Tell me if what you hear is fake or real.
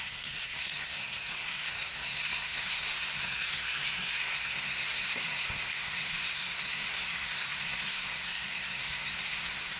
fake